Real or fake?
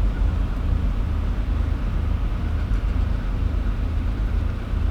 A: real